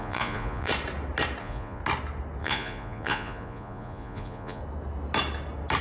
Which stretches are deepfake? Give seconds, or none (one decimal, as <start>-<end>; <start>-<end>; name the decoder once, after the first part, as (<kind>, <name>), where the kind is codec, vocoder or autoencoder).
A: 0.0-0.7 (vocoder, Vocos); 1.4-1.8; 2.4-4.6